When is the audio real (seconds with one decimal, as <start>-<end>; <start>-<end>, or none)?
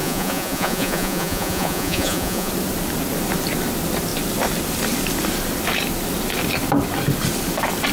2.5-7.9